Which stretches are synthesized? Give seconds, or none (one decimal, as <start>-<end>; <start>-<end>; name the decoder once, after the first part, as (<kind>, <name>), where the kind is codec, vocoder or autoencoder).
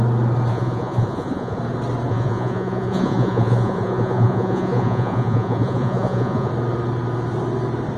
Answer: 0.5-1.6 (vocoder, Vocos); 2.1-6.5